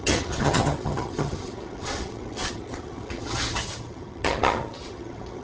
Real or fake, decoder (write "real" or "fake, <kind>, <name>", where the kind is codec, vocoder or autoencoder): fake, vocoder, HiFi-GAN